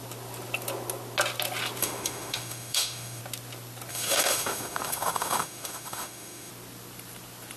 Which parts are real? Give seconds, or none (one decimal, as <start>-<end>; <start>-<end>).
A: 0.0-1.8; 3.2-3.9; 6.5-7.6